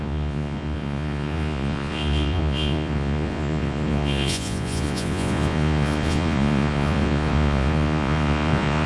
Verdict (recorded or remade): remade